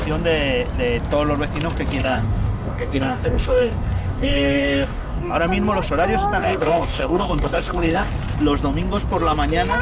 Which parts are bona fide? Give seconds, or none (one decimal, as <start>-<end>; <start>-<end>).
0.0-2.0; 5.3-6.4; 8.1-9.8